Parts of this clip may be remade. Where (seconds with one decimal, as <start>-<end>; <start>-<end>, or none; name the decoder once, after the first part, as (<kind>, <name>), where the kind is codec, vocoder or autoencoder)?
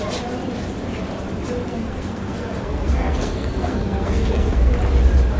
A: 1.7-4.7 (codec, SNAC)